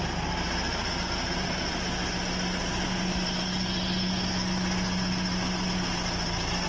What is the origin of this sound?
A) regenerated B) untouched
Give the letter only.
B